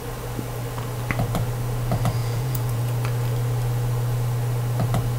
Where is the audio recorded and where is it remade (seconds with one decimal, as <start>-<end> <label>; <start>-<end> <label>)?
0.0-2.2 recorded; 2.2-2.8 remade; 2.8-5.2 recorded